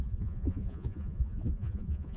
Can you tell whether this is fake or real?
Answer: fake